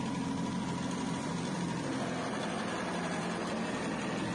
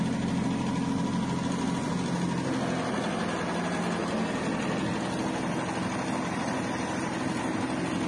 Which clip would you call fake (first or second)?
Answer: first